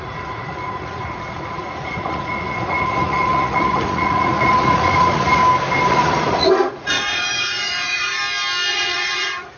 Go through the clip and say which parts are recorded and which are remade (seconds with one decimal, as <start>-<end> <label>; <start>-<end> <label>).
0.0-5.4 remade; 5.4-5.9 recorded; 5.9-8.2 remade; 8.2-8.7 recorded; 8.7-9.6 remade